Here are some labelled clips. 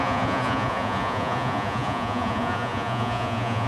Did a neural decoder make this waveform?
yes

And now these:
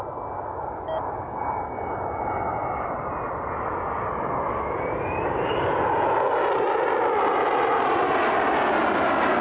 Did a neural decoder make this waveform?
no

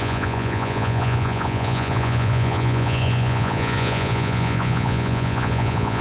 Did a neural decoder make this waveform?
yes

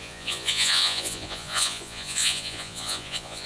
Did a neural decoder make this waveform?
yes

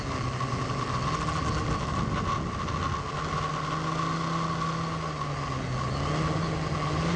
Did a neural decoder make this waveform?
no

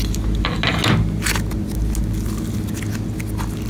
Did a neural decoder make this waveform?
no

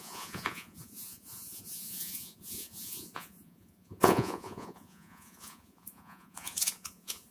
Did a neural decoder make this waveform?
yes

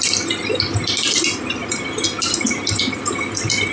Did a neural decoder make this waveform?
no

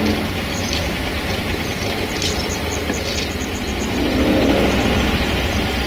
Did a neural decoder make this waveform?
no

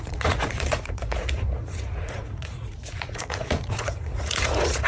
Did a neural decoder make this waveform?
yes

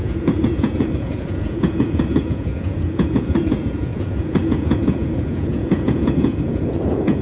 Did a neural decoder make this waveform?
yes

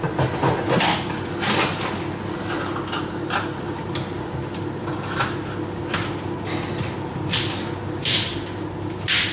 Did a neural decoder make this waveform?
no